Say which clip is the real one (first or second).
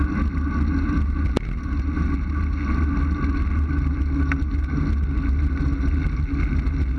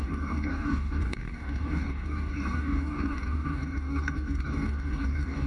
first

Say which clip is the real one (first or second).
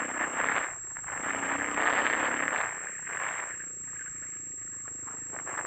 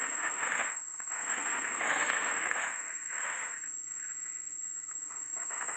first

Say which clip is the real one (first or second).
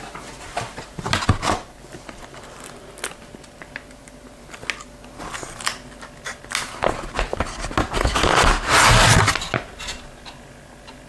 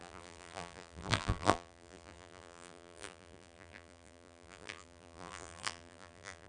first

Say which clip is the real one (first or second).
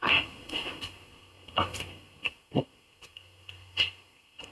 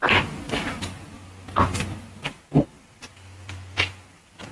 second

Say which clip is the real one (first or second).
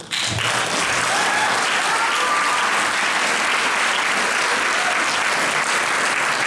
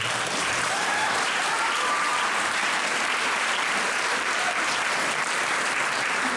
first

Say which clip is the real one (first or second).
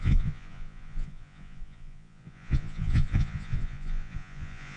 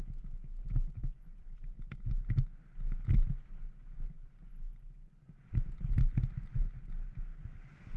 second